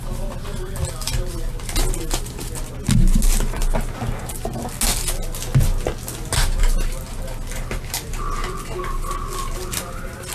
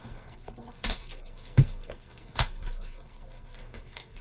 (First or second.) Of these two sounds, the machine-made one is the second